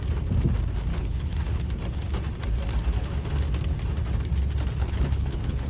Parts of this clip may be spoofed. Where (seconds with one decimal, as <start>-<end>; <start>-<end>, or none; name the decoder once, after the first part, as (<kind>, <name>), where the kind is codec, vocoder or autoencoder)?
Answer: 0.9-1.7 (codec, HILCodec); 4.8-5.7